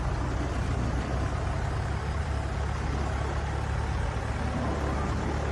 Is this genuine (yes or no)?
yes